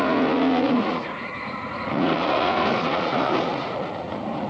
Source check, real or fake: fake